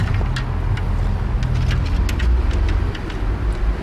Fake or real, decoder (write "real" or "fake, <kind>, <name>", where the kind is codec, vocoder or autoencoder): real